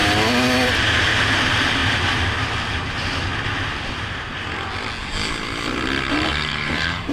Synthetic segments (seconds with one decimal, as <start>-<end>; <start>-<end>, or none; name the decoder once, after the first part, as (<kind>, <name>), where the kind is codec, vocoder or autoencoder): 1.3-1.8 (vocoder, BigVGAN v2); 6.1-7.1